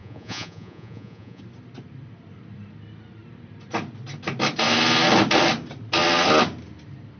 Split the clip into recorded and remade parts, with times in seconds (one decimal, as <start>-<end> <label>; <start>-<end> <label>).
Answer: 0.0-1.4 remade; 1.4-7.2 recorded